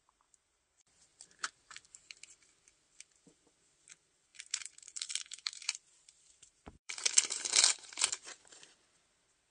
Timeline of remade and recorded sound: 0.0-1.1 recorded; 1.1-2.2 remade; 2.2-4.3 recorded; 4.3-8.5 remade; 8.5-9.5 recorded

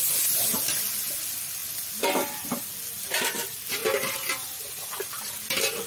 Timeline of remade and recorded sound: 0.0-5.9 recorded

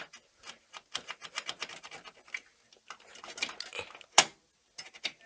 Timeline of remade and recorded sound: 0.0-5.3 recorded

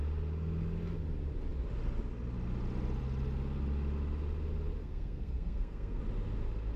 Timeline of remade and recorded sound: 0.0-4.8 recorded; 4.8-6.0 remade; 6.0-6.8 recorded

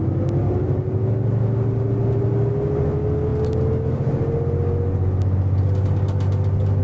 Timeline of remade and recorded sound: 0.0-6.8 recorded

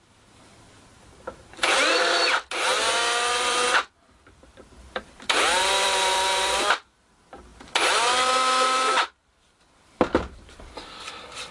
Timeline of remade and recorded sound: 0.0-2.7 remade; 2.7-3.3 recorded; 3.3-7.5 remade; 7.5-9.2 recorded; 9.2-11.5 remade